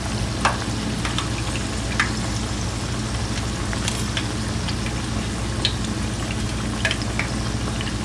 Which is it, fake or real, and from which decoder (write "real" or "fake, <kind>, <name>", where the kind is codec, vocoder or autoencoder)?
real